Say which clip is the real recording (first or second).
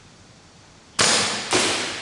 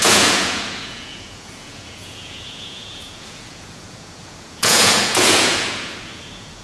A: first